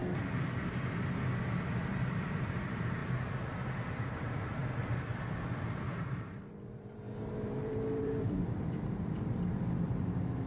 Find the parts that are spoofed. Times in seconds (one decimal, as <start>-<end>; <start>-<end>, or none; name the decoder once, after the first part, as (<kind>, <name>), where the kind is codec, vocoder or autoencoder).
1.9-3.0 (vocoder, BigVGAN v2); 4.0-4.6; 5.7-10.5